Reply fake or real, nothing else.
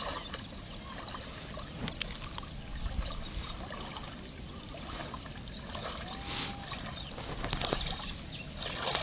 real